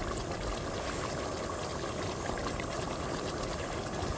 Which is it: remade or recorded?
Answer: recorded